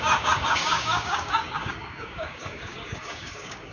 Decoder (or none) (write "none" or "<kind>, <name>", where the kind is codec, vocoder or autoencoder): codec, DAC